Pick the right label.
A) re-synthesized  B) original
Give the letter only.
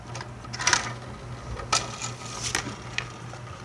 B